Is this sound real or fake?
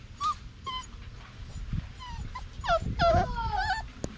real